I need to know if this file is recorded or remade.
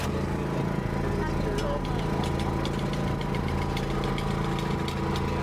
recorded